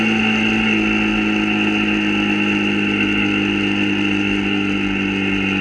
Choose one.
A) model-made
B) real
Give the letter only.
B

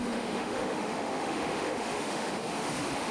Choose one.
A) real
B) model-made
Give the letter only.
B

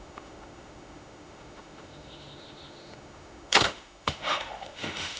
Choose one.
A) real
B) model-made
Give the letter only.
B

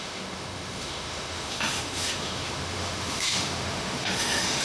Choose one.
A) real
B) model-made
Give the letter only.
B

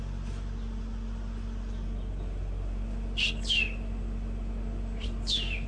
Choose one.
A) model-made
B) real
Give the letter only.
B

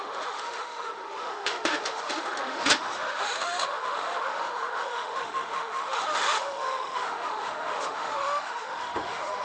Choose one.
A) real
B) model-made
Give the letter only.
B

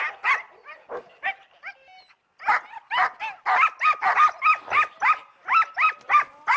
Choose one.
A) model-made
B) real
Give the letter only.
B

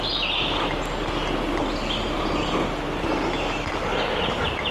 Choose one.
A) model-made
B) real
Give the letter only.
B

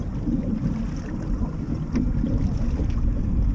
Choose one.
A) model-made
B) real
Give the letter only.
B